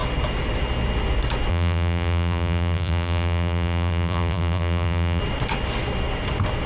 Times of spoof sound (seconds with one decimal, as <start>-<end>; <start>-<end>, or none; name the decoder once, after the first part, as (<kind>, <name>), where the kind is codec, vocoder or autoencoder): 1.5-5.2 (vocoder, BigVGAN v2)